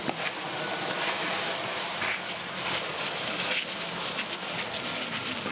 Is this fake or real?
fake